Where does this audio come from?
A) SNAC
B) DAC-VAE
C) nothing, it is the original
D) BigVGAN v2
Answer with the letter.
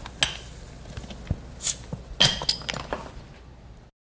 C